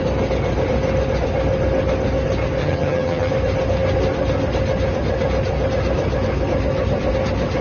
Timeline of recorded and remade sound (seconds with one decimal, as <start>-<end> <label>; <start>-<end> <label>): 0.0-2.6 recorded; 2.6-3.3 remade; 3.3-7.6 recorded